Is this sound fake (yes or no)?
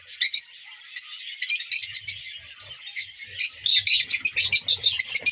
no